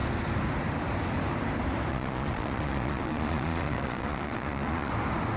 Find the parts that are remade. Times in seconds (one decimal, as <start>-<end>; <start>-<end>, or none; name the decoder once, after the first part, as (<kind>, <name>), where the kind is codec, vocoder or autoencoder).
1.9-4.9 (vocoder, Vocos)